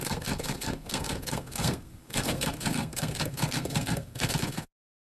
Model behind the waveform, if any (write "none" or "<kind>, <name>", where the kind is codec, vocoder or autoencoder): codec, SNAC